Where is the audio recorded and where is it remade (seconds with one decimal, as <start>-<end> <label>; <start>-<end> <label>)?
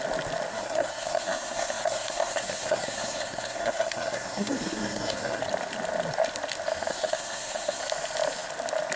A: 0.0-0.5 recorded; 0.5-5.4 remade; 5.4-6.9 recorded; 6.9-7.8 remade; 7.8-9.0 recorded